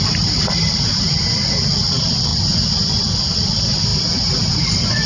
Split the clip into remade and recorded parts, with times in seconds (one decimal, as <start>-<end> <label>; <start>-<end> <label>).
0.0-5.1 recorded